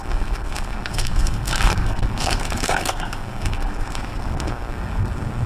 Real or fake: fake